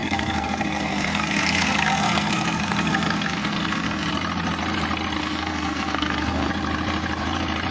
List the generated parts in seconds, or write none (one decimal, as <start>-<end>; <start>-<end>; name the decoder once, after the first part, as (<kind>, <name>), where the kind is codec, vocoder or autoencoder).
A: 0.0-4.1 (codec, SNAC); 5.2-6.5